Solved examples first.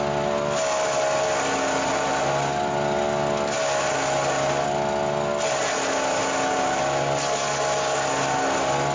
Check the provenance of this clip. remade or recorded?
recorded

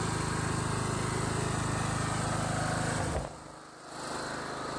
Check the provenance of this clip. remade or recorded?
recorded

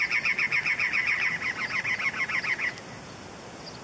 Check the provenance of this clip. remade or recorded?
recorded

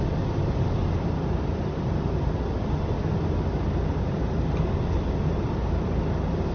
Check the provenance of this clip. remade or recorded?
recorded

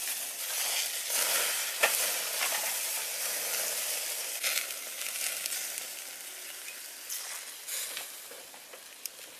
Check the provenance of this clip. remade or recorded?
recorded